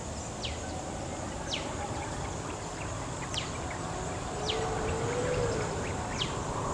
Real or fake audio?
real